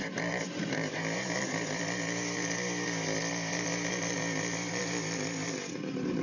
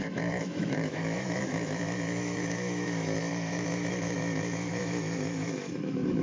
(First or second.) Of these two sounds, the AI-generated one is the second